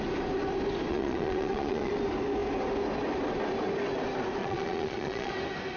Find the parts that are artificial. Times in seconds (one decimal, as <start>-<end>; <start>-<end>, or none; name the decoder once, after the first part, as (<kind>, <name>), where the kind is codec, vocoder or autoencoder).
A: 0.9-1.9 (vocoder, Vocos); 4.4-5.3